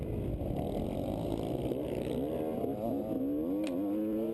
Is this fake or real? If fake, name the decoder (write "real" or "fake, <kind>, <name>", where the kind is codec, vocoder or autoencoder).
real